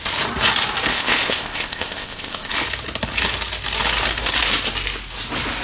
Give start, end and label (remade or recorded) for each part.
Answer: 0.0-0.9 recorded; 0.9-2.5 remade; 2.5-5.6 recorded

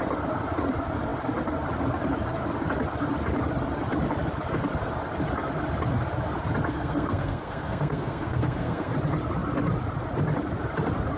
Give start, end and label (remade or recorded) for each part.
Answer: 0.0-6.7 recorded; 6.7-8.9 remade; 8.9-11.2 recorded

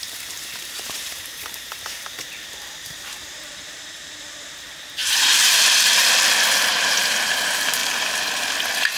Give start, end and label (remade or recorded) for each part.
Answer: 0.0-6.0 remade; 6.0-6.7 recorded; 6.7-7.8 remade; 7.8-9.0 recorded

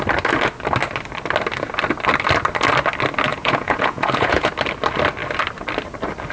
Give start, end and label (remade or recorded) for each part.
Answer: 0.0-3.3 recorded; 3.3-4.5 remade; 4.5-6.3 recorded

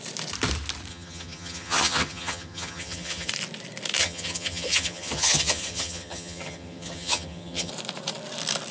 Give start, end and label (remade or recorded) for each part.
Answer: 0.0-0.9 recorded; 0.9-3.3 remade; 3.3-4.0 recorded; 4.0-7.7 remade; 7.7-8.7 recorded

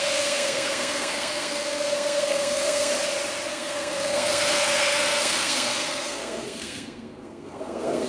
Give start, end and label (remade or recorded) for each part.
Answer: 0.0-2.9 remade; 2.9-3.5 recorded; 3.5-8.1 remade

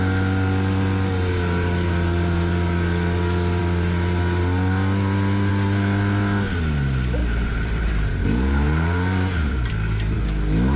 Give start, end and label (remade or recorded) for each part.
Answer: 0.0-7.2 recorded; 7.2-9.7 remade; 9.7-10.8 recorded

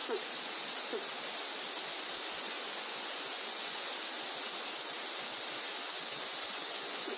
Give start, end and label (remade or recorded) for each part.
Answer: 0.0-2.3 recorded; 2.3-3.9 remade; 3.9-5.8 recorded; 5.8-7.2 remade